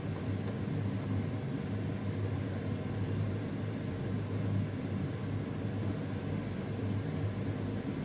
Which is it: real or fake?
real